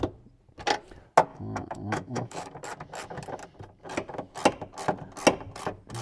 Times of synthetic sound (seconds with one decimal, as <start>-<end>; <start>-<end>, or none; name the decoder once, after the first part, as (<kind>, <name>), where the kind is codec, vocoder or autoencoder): 1.3-2.6 (autoencoder, DAC-VAE)